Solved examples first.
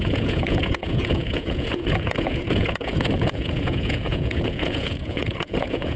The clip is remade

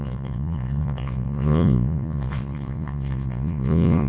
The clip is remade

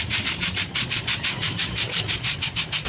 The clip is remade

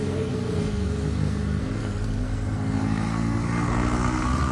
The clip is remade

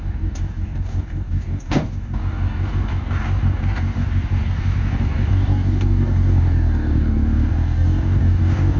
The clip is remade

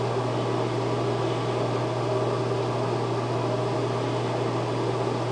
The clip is recorded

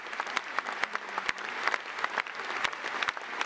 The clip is recorded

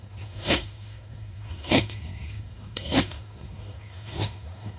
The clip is remade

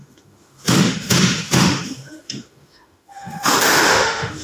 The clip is remade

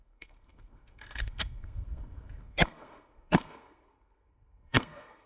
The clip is remade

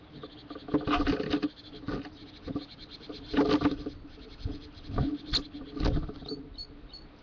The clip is recorded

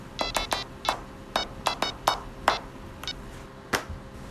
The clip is recorded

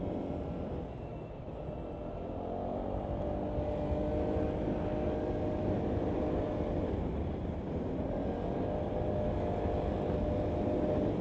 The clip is recorded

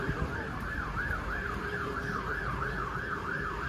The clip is remade